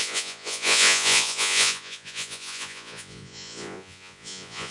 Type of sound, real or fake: fake